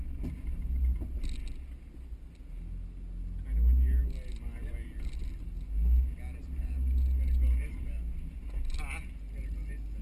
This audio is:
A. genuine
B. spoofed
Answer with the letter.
A